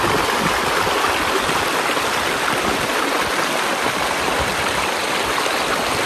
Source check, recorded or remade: recorded